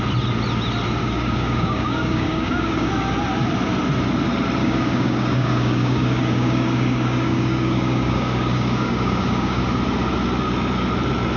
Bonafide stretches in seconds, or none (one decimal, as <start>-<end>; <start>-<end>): 0.0-1.0; 2.9-4.6; 9.6-11.4